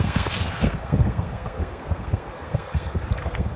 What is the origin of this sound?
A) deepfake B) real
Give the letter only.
A